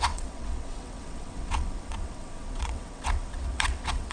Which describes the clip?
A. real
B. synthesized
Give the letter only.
B